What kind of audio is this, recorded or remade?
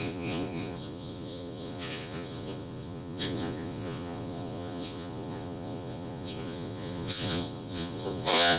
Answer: remade